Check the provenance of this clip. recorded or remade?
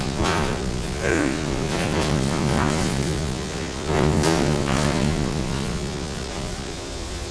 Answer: remade